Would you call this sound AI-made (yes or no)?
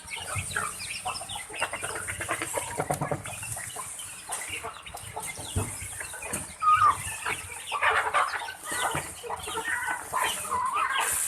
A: no